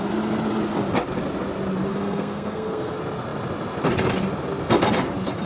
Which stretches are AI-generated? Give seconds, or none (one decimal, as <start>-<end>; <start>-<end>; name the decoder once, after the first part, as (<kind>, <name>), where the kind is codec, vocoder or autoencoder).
1.9-2.9 (codec, SNAC)

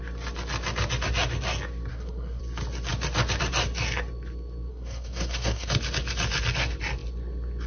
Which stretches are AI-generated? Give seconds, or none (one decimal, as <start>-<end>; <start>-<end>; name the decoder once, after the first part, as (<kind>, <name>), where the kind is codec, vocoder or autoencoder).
1.9-2.4 (codec, SNAC); 4.7-5.7

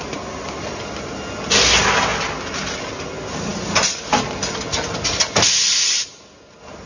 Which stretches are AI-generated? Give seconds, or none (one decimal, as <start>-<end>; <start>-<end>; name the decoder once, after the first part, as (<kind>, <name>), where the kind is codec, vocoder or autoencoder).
none

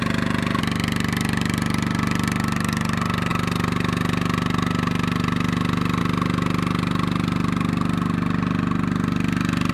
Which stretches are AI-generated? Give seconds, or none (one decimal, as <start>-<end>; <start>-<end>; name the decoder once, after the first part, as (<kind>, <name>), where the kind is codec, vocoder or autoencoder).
none

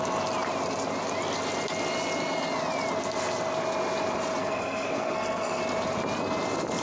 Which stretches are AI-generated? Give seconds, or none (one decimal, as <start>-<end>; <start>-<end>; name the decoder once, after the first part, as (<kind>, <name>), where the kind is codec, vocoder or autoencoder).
4.4-5.6 (codec, SNAC)

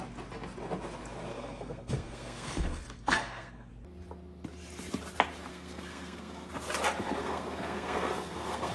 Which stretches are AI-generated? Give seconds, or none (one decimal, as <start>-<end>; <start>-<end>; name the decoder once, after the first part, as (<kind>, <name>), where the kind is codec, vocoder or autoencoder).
1.3-3.7 (codec, SNAC); 5.5-6.5; 7.2-8.7

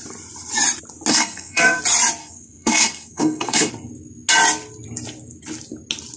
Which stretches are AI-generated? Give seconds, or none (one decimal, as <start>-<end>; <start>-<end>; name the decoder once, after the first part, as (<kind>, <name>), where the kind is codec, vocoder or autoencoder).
1.1-1.8 (codec, SNAC); 2.2-3.7

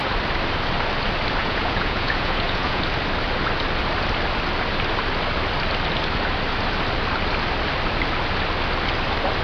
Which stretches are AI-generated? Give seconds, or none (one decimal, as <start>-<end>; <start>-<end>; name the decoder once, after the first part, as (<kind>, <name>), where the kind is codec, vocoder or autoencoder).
1.4-2.8 (vocoder, Vocos)